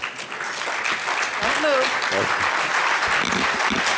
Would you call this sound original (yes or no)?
yes